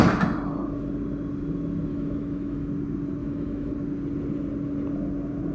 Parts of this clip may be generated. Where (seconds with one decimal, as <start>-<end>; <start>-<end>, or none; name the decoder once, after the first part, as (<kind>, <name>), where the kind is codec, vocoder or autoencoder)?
1.9-2.7 (autoencoder, DAC-VAE); 3.2-3.7